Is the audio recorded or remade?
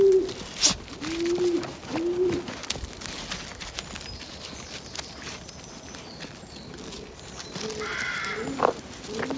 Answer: recorded